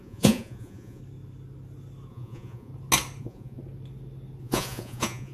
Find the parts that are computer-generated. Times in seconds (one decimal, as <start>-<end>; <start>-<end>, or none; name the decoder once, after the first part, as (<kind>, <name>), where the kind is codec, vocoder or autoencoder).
0.0-1.0 (vocoder, Vocos); 2.1-2.7; 3.2-3.6; 4.4-5.3